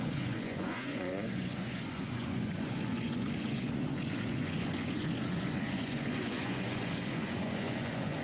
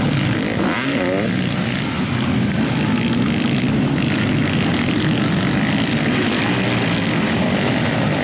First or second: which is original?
second